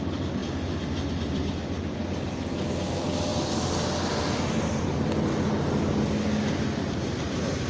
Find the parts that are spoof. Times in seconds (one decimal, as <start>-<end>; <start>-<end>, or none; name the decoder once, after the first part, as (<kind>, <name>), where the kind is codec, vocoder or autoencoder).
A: none